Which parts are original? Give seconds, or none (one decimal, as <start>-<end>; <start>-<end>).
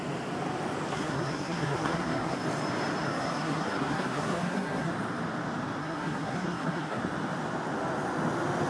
0.0-0.9; 2.4-3.0; 4.9-5.8; 7.0-8.7